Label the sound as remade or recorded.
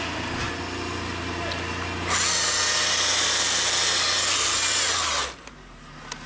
recorded